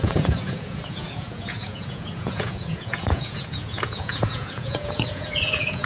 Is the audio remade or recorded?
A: remade